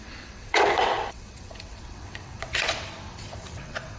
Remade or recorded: remade